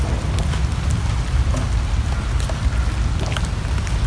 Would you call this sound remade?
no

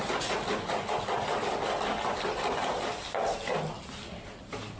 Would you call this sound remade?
no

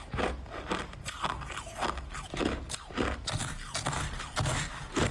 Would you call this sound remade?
no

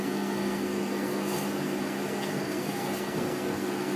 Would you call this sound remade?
yes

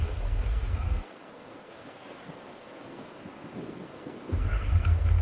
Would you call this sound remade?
yes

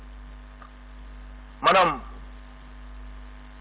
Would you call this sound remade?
no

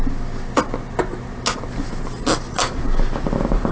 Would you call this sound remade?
no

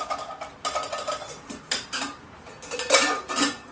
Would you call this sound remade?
no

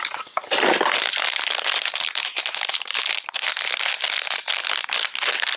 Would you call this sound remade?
no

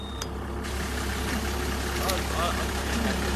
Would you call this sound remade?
no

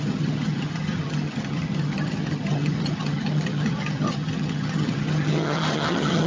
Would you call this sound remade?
yes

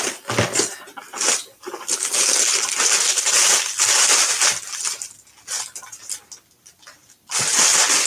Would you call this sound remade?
no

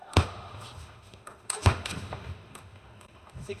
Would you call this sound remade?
yes